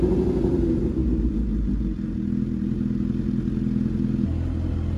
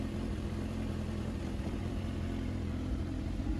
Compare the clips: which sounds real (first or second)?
first